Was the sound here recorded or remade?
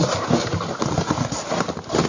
recorded